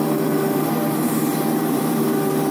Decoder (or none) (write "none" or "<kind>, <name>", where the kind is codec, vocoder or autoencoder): vocoder, BigVGAN v2